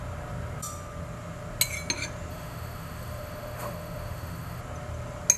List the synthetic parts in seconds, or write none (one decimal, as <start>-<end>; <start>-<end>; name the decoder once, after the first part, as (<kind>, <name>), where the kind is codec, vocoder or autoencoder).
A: 2.3-4.6 (autoencoder, DAC-VAE)